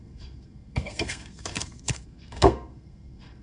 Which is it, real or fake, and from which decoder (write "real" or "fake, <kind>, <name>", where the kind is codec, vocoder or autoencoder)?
fake, codec, SNAC